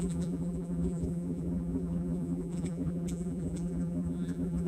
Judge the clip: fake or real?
fake